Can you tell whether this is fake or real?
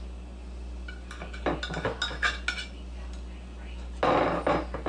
real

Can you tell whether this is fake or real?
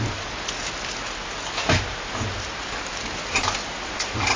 real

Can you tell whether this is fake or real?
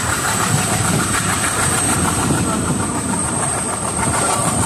fake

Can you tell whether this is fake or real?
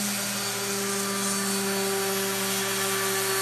real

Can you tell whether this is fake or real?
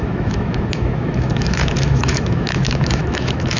fake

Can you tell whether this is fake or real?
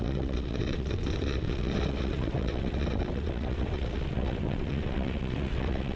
fake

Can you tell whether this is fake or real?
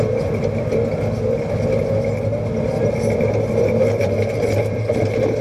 real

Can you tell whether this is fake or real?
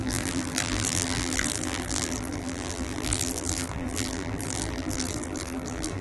fake